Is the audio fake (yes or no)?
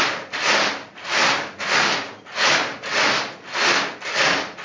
no